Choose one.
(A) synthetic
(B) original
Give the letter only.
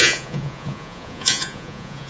A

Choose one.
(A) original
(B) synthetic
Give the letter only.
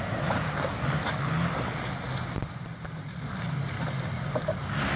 A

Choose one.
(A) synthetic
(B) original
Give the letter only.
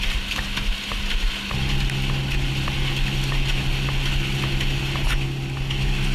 B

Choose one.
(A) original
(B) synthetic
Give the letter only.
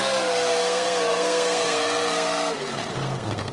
B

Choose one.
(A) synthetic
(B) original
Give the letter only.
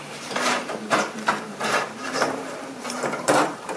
A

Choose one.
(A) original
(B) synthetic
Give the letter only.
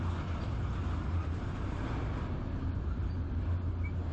A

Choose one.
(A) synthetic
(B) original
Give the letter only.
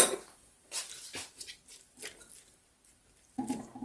A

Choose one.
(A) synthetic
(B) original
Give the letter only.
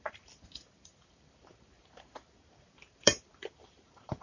A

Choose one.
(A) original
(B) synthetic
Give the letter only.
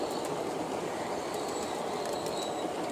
A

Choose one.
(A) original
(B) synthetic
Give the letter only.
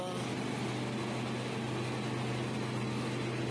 A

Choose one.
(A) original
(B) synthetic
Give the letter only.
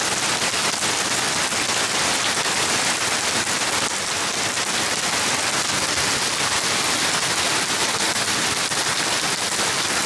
A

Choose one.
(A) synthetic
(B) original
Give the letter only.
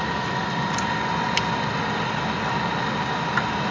B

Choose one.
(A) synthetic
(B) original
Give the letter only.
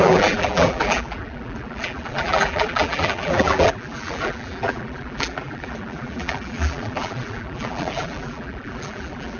A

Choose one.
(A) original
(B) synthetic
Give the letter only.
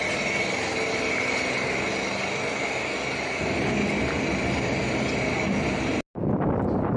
A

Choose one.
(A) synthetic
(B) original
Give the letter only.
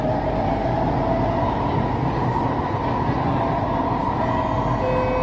B